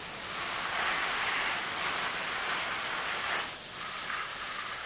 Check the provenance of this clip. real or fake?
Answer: real